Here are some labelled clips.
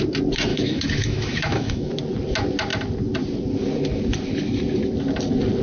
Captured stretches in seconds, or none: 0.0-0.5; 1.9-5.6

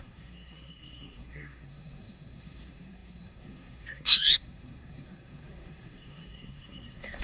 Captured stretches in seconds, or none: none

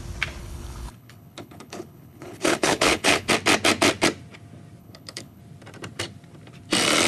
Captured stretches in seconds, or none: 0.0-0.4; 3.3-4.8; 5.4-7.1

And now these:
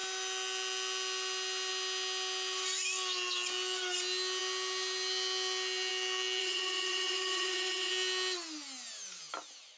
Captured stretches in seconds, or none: 0.0-6.4; 7.9-9.8